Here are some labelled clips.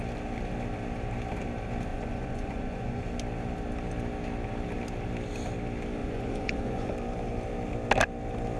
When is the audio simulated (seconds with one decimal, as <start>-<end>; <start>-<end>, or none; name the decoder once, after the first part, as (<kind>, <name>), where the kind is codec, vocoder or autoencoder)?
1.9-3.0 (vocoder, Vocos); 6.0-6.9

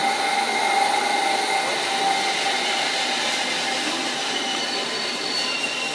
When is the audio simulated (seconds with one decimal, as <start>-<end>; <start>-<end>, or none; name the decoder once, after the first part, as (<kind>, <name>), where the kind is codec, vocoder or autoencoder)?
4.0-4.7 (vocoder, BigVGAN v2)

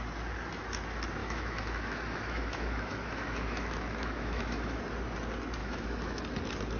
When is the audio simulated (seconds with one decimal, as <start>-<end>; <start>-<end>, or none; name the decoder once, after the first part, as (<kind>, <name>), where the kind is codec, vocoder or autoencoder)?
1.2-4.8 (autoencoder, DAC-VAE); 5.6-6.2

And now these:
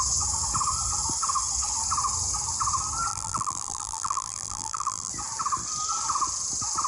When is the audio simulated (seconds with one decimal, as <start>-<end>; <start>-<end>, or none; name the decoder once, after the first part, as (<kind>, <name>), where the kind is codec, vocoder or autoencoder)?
3.1-5.1 (vocoder, BigVGAN v2)